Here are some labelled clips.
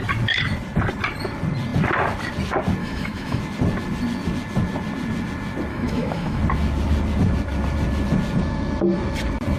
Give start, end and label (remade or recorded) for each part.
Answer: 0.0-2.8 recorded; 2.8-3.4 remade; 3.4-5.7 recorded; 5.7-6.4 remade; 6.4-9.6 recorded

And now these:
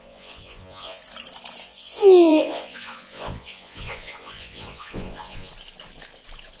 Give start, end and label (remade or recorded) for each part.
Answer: 0.0-1.0 remade; 1.0-1.6 recorded; 1.6-5.5 remade; 5.5-6.6 recorded

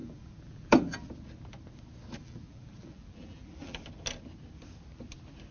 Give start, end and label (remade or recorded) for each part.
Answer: 0.0-1.1 remade; 1.1-2.2 recorded; 2.2-3.8 remade; 3.8-5.5 recorded

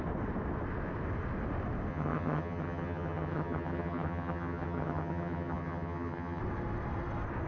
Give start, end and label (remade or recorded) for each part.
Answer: 0.0-1.9 recorded; 1.9-6.4 remade; 6.4-7.5 recorded

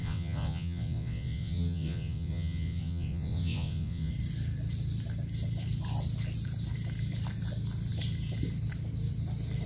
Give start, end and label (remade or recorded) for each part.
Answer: 0.0-4.1 remade; 4.1-9.7 recorded

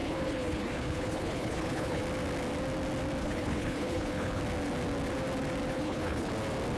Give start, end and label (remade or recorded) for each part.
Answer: 0.0-2.0 remade; 2.0-3.2 recorded; 3.2-4.4 remade; 4.4-5.7 recorded; 5.7-6.3 remade; 6.3-6.8 recorded

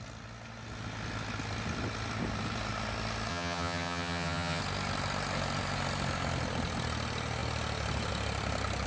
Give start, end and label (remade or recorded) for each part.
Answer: 0.0-3.3 recorded; 3.3-4.6 remade; 4.6-8.9 recorded